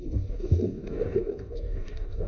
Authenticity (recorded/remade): remade